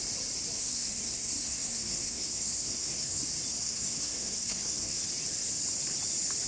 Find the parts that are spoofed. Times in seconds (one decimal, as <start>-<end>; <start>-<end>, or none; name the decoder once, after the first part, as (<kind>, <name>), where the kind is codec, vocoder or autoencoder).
0.6-3.2 (codec, SNAC); 3.6-5.0